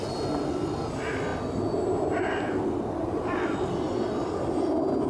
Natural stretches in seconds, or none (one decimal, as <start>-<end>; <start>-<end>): 0.0-5.1